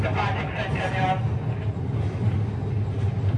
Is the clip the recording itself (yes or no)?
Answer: yes